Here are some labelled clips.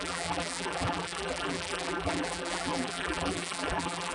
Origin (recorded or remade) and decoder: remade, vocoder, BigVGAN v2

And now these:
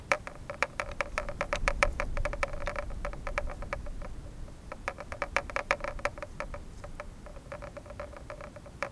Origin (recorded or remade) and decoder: remade, vocoder, BigVGAN v2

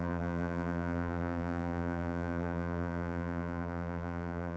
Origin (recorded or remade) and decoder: remade, vocoder, BigVGAN v2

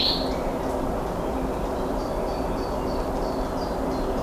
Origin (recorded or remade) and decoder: recorded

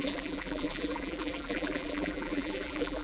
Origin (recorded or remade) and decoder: remade, vocoder, BigVGAN v2